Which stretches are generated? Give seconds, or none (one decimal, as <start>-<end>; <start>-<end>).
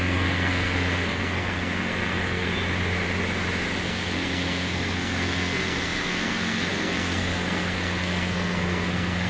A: 0.0-2.5; 3.8-9.3